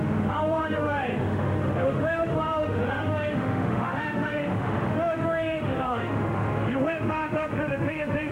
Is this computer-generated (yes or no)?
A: yes